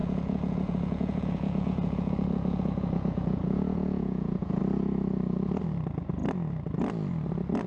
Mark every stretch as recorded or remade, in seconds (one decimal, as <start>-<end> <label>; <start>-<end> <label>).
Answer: 0.0-4.6 remade; 4.6-7.7 recorded